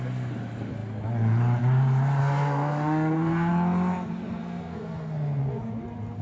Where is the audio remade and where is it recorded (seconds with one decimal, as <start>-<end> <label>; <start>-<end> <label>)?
0.0-2.2 recorded; 2.2-3.5 remade; 3.5-4.4 recorded; 4.4-5.4 remade; 5.4-6.2 recorded